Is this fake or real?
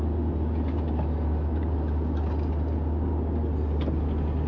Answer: real